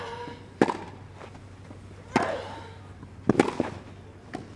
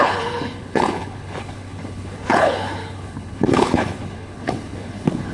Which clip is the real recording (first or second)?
first